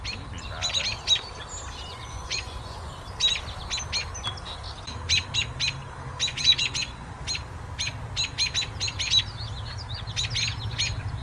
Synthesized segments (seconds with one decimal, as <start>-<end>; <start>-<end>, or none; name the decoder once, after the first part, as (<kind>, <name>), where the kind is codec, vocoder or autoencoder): 1.9-2.9 (vocoder, Vocos); 6.3-7.2